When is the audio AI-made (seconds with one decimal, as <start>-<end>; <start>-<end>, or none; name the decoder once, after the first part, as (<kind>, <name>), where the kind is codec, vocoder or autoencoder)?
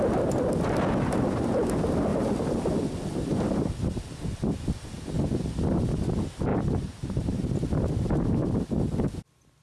2.1-2.6 (vocoder, BigVGAN v2); 6.5-8.4